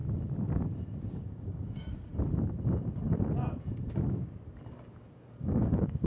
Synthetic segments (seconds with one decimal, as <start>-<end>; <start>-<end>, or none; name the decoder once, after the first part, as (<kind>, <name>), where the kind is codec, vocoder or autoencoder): 1.1-2.1 (codec, DAC); 4.9-6.1